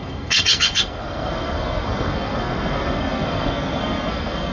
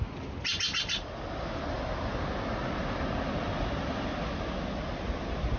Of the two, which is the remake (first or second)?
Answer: first